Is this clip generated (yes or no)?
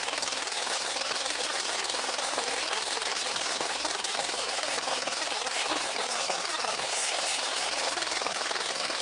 yes